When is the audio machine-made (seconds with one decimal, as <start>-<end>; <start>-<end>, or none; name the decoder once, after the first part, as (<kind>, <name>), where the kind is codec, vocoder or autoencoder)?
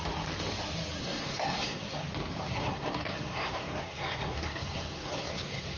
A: 1.0-1.8 (codec, SNAC); 2.5-5.8